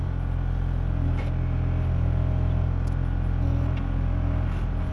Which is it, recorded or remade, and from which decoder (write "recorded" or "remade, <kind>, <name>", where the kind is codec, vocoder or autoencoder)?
recorded